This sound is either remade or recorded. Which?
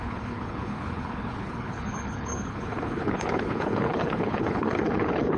remade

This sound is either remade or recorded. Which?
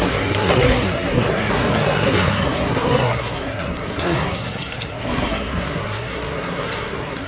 remade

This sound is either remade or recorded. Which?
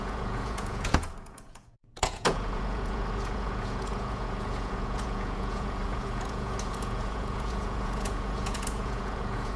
remade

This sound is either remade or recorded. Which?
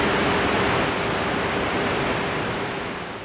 recorded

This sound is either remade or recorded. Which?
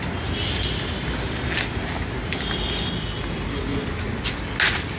recorded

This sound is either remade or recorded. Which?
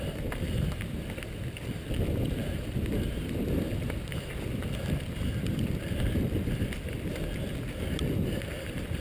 remade